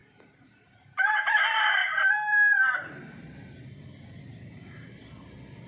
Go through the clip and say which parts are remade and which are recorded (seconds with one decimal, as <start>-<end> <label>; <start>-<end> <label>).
0.0-1.4 remade; 1.4-1.8 recorded; 1.8-3.2 remade; 3.2-5.7 recorded